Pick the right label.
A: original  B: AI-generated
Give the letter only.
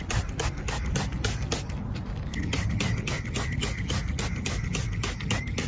A